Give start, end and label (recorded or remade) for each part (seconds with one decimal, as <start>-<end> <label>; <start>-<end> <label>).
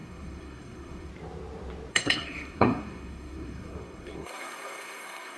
0.0-1.1 remade; 1.1-1.9 recorded; 1.9-5.4 remade